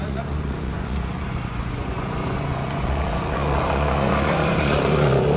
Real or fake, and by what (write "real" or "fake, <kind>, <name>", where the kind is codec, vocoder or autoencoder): fake, vocoder, Vocos